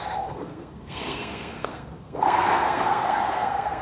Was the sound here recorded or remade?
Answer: remade